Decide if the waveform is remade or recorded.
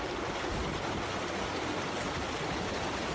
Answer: recorded